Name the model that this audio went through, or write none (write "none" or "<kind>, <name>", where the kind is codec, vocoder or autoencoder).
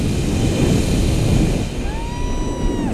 none